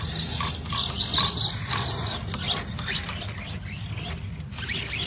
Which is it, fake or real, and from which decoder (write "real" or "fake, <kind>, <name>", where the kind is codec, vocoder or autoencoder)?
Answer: real